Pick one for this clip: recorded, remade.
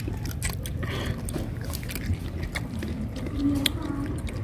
recorded